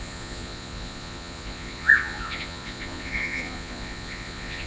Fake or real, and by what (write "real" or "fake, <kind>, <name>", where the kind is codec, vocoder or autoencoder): fake, vocoder, Vocos